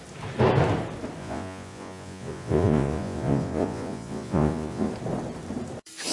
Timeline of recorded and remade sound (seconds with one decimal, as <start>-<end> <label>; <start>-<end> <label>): 0.0-1.2 recorded; 1.2-4.9 remade; 4.9-6.1 recorded